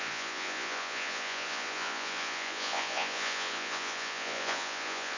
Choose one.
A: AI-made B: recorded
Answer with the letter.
A